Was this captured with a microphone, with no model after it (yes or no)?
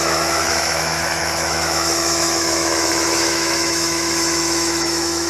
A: no